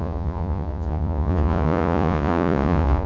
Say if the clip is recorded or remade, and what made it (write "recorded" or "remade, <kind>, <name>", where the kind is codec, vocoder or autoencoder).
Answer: remade, vocoder, Vocos